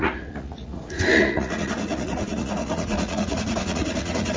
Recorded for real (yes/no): no